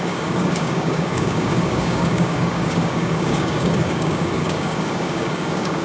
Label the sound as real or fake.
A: fake